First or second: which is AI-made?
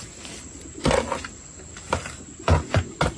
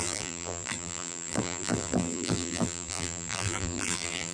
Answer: second